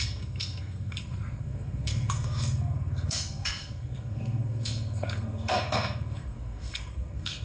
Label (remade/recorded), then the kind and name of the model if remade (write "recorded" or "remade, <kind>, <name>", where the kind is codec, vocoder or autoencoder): remade, codec, SNAC